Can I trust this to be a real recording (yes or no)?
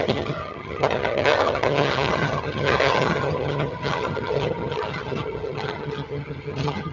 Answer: no